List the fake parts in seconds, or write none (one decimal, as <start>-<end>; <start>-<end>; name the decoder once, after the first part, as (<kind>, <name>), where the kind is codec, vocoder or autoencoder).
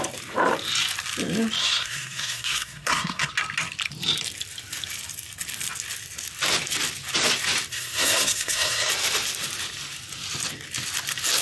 1.6-3.3 (codec, SNAC); 7.7-8.9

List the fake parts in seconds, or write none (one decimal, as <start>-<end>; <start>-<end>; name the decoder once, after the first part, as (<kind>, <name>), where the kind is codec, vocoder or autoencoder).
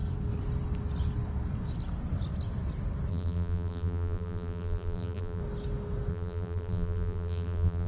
3.1-5.4 (vocoder, BigVGAN v2); 6.1-7.9